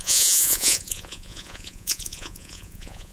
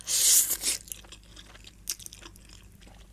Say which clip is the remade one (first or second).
first